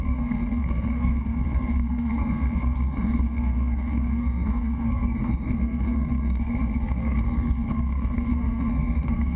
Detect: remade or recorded remade